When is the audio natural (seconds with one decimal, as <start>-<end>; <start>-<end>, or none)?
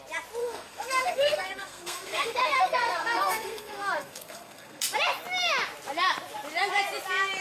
0.0-0.4; 4.8-7.4